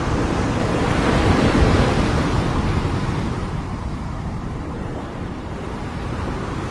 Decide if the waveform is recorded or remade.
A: remade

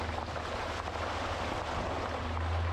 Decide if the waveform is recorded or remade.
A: recorded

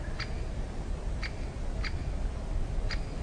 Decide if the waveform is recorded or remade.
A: recorded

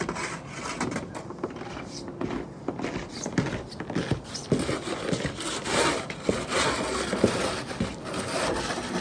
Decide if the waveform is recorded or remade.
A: recorded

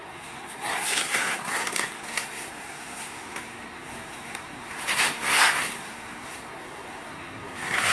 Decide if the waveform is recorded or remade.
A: remade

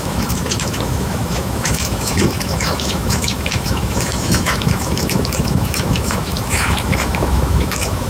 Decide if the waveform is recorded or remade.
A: remade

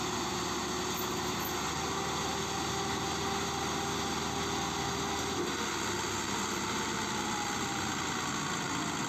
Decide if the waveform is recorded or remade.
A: recorded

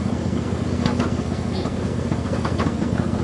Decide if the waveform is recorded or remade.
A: remade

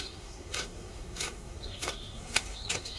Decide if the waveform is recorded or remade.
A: remade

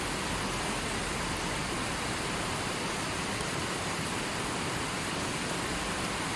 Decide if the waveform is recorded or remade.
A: recorded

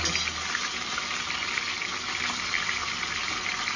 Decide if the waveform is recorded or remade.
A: recorded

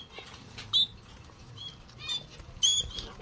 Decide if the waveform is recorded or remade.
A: recorded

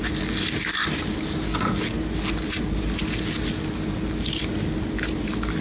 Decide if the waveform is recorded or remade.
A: recorded